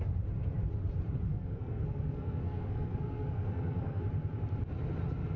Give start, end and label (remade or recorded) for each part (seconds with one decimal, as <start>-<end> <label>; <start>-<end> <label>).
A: 0.0-1.3 recorded; 1.3-4.0 remade; 4.0-5.4 recorded